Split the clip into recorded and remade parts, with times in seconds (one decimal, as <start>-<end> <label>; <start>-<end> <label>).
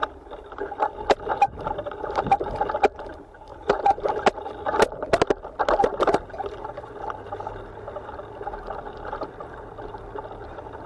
0.0-3.5 recorded; 3.5-4.1 remade; 4.1-10.9 recorded